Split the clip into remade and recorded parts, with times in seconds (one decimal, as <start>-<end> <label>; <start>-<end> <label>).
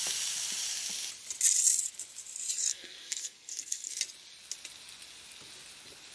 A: 0.0-2.7 recorded; 2.7-4.0 remade; 4.0-6.1 recorded